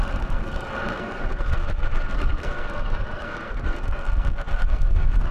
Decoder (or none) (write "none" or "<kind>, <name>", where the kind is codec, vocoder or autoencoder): codec, SNAC